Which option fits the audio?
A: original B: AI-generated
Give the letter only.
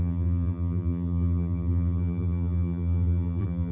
B